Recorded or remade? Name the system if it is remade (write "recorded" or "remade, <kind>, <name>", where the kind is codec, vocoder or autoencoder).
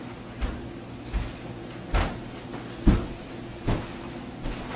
recorded